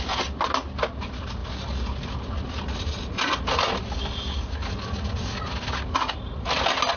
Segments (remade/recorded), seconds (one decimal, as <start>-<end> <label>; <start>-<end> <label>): 0.0-7.0 recorded